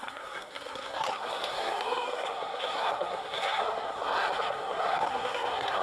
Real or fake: fake